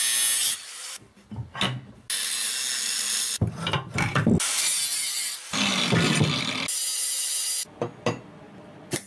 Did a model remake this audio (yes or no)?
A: no